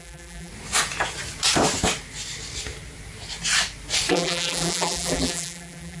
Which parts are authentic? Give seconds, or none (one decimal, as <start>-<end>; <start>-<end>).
0.5-4.1